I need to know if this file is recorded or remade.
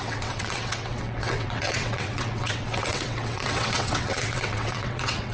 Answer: remade